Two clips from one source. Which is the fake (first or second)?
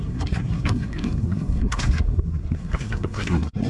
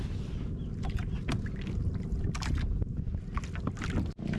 first